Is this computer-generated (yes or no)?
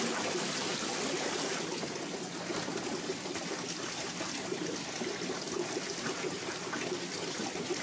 no